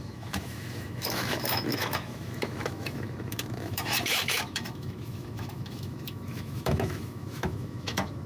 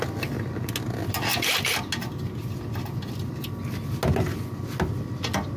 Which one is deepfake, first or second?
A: first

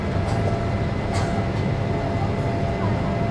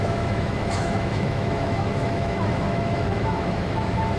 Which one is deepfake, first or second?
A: second